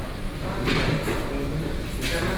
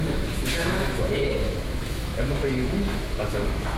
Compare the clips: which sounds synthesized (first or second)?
second